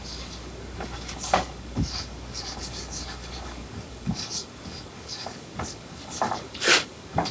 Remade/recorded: remade